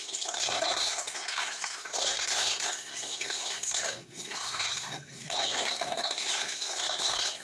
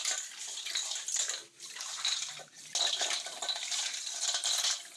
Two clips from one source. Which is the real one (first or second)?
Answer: second